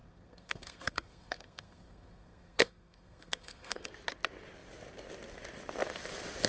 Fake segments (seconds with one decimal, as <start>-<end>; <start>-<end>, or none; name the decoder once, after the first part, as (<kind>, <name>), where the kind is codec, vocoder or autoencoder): 0.0-3.9 (codec, SNAC)